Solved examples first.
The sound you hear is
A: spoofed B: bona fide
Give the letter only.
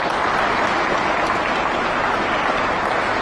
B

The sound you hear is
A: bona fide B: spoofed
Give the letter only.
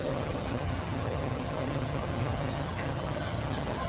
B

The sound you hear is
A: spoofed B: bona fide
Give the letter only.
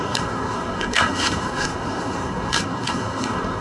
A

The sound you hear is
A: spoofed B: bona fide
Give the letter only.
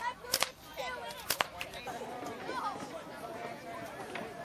A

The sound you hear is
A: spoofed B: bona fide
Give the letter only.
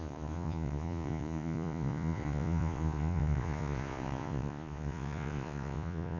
A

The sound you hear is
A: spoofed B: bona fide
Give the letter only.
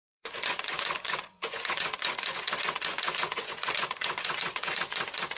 A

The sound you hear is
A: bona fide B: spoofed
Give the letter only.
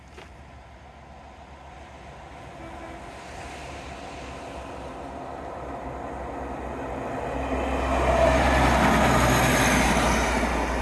A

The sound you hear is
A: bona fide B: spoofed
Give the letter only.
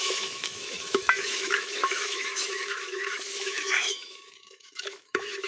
B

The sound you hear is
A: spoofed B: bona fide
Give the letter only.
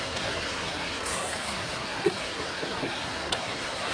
A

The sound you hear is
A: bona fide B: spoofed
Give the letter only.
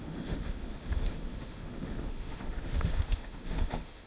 B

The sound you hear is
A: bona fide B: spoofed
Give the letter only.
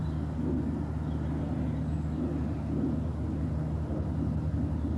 A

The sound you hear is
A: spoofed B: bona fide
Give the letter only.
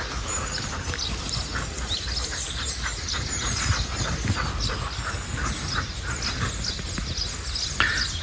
B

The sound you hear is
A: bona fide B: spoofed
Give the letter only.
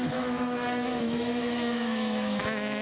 B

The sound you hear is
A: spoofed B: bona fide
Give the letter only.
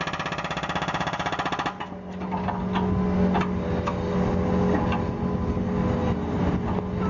B